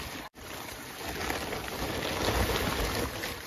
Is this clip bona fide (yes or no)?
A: yes